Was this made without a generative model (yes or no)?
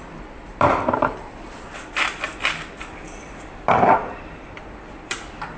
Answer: no